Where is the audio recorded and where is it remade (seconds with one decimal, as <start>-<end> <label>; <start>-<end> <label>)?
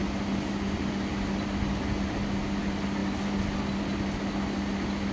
0.0-5.1 recorded